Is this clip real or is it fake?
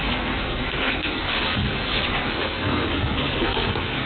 fake